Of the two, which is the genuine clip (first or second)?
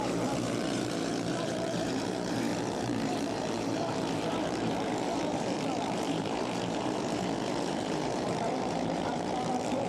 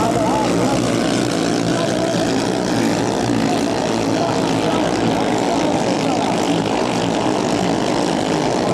second